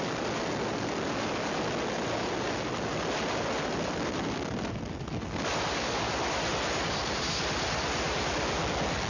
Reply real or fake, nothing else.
real